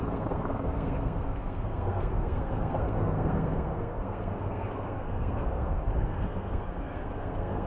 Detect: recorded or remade remade